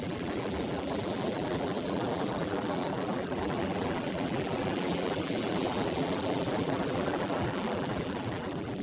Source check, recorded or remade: remade